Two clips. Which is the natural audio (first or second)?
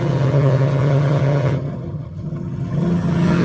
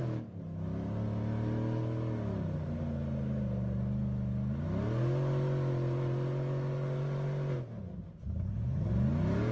second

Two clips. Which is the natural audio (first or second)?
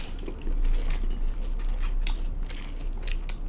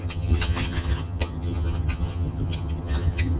first